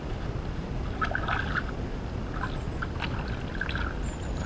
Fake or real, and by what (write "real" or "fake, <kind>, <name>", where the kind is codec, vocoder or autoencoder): real